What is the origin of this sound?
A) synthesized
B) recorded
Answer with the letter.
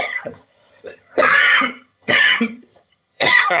A